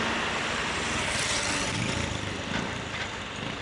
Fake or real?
fake